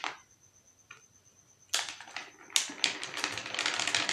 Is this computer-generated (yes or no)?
no